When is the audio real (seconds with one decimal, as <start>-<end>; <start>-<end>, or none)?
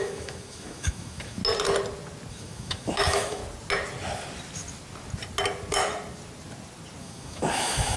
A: 1.4-2.3; 3.4-7.0